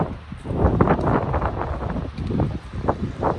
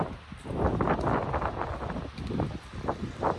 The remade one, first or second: first